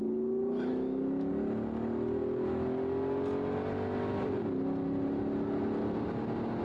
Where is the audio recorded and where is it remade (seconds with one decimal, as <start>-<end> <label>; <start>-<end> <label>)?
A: 0.0-0.7 recorded; 0.7-1.3 remade; 1.3-6.6 recorded